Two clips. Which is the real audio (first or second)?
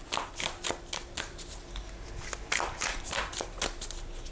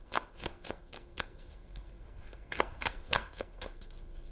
first